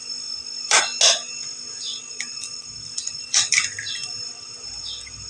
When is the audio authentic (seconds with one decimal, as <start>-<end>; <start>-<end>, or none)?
0.8-2.1